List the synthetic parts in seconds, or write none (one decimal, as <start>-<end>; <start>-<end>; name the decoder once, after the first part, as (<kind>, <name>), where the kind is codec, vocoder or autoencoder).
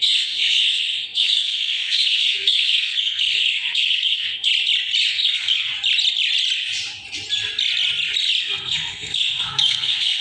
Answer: 0.0-4.5 (codec, SNAC); 5.1-5.7; 8.4-10.2